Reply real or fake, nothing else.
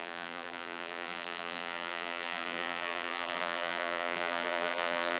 fake